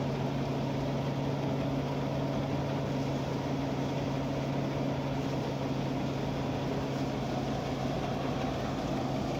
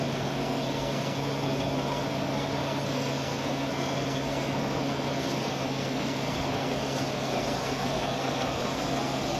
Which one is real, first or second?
first